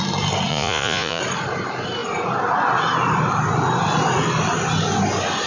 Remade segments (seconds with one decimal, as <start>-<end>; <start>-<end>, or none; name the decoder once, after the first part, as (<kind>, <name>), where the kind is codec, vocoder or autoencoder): 0.5-1.2 (vocoder, Vocos)